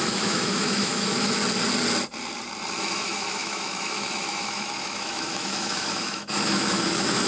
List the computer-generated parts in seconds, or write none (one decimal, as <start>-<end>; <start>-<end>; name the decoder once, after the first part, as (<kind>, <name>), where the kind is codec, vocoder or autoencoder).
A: 0.0-1.4 (autoencoder, DAC-VAE); 2.8-7.3